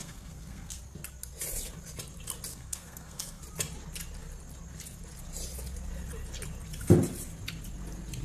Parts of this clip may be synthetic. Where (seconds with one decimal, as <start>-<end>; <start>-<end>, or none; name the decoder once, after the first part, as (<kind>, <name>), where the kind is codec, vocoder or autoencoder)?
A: 0.0-0.8 (codec, SNAC); 2.5-3.4